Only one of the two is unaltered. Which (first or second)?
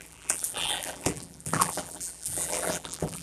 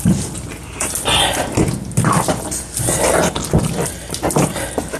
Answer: second